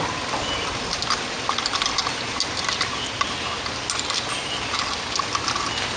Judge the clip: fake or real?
real